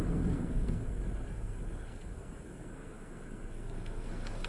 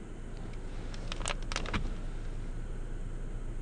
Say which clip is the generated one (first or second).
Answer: first